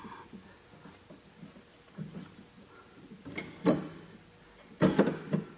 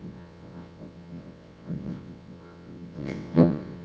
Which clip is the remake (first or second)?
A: second